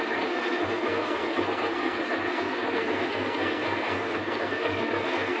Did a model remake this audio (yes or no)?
yes